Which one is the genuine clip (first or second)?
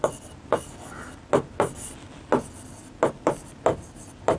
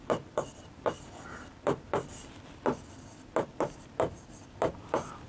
first